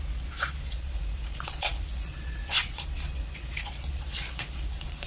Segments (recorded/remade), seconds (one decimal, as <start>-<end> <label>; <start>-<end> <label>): 0.0-5.1 remade